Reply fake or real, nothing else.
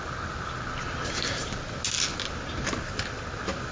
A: real